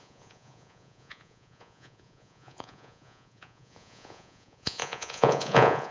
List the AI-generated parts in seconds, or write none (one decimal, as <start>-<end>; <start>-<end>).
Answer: 0.0-5.9